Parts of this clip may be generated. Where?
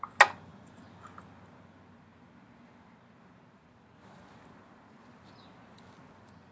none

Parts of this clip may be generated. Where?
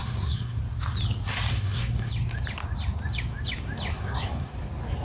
0.0-0.6 (codec, SNAC); 1.5-2.1; 3.9-4.5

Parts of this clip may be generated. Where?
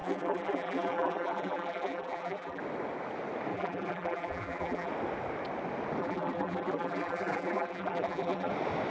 0.0-2.6 (vocoder, BigVGAN v2); 3.5-4.9; 6.0-8.5